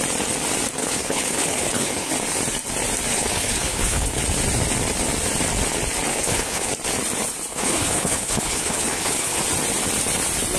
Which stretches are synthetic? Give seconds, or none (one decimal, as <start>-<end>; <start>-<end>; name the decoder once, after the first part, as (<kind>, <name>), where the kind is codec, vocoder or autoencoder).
0.8-2.1 (codec, HILCodec); 3.1-4.2; 6.1-6.7; 7.5-9.4